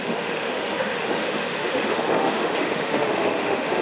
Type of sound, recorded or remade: remade